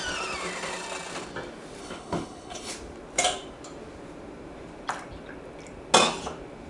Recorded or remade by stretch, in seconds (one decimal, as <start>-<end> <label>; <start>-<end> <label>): 0.0-1.8 recorded; 1.8-2.7 remade; 2.7-6.7 recorded